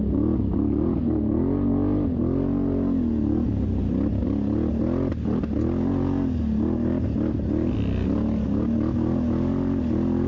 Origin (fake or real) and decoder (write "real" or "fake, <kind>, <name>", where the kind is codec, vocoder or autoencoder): real